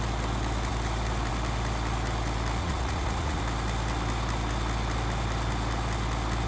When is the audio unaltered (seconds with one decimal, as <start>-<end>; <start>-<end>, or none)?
0.0-2.6; 3.4-6.5